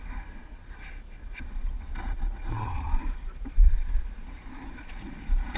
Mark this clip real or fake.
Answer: fake